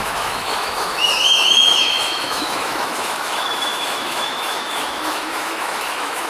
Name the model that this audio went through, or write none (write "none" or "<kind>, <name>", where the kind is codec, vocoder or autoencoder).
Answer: autoencoder, DAC-VAE